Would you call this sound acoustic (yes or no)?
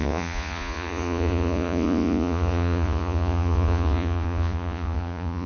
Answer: no